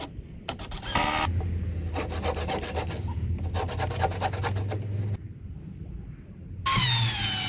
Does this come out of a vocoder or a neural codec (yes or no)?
no